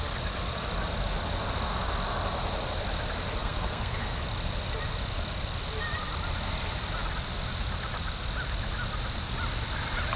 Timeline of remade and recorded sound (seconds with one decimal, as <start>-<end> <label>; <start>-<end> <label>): 0.0-3.4 recorded; 3.4-4.2 remade; 4.2-10.2 recorded